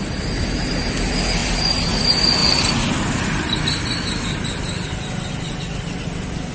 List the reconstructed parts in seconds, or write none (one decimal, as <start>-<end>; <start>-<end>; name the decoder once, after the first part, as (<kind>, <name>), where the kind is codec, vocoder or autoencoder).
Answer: none